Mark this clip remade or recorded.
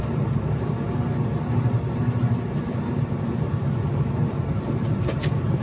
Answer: recorded